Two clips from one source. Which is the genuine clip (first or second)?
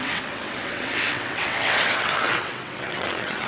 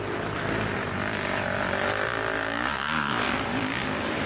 second